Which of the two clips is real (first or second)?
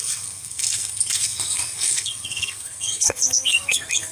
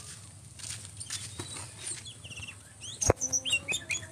second